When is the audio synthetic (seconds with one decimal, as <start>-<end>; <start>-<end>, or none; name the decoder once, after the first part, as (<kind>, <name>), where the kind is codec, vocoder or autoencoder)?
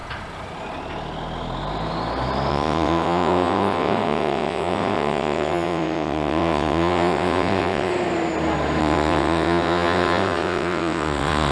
2.5-7.9 (vocoder, WaveNeXt); 8.8-11.5